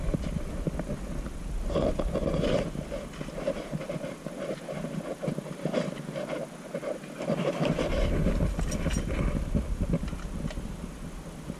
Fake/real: real